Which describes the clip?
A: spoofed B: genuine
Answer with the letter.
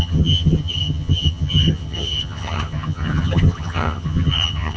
A